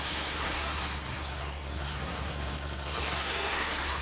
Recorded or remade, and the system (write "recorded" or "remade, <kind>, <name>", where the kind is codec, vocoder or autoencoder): remade, codec, SNAC